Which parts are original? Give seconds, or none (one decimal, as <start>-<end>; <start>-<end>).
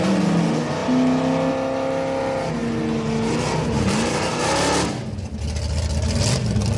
0.0-6.8